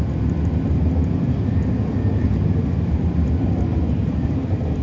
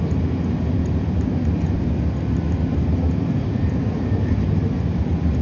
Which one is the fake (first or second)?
second